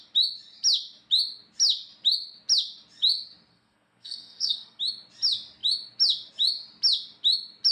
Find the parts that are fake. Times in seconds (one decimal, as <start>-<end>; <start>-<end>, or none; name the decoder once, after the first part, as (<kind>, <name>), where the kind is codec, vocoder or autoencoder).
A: 3.5-4.8 (codec, SNAC)